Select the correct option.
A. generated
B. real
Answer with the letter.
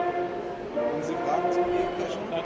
B